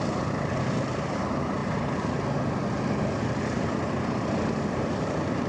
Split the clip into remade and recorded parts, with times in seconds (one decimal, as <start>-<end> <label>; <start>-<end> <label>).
0.0-1.6 remade; 1.6-4.6 recorded; 4.6-5.5 remade